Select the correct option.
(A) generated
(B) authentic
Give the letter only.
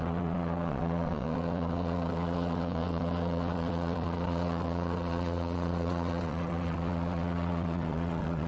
A